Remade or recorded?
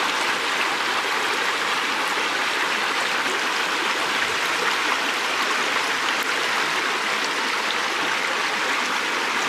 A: recorded